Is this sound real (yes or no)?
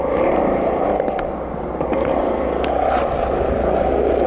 yes